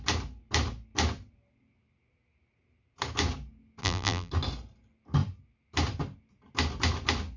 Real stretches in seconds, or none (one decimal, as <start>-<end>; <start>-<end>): 0.0-3.8; 4.3-7.4